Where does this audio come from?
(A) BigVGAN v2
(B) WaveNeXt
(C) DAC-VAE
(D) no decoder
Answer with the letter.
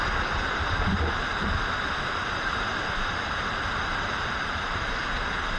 A